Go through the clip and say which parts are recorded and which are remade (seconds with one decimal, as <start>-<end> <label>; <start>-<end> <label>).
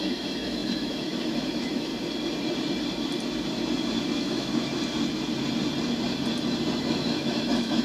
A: 0.0-1.9 remade; 1.9-4.1 recorded; 4.1-4.5 remade; 4.5-6.8 recorded; 6.8-7.8 remade